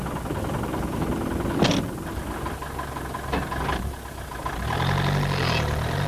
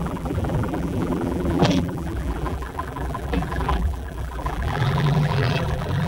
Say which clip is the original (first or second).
first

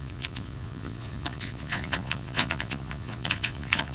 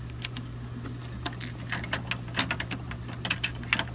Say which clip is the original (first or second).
second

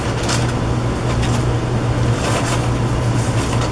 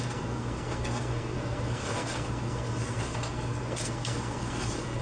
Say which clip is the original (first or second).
first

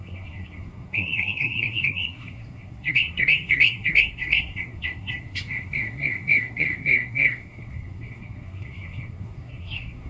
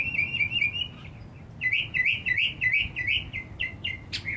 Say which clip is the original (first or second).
second